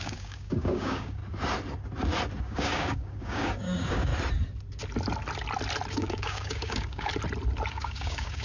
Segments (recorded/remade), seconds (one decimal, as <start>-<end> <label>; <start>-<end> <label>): 0.0-1.2 remade; 1.2-2.4 recorded; 2.4-4.1 remade; 4.1-5.9 recorded; 5.9-7.1 remade; 7.1-7.7 recorded; 7.7-8.4 remade